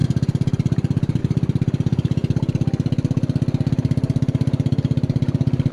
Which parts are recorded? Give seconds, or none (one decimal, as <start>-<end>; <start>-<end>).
2.2-3.7